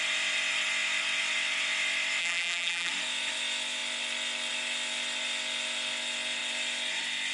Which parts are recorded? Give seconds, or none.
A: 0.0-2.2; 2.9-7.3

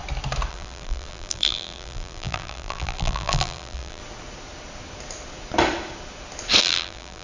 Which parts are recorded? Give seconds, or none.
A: 0.0-0.5; 4.0-6.6

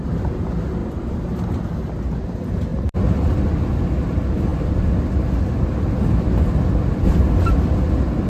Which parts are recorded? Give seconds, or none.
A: 0.0-0.8; 1.6-8.3

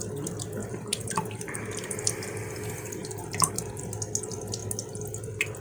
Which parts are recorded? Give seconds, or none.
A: 0.0-0.6; 2.5-3.0; 3.8-5.6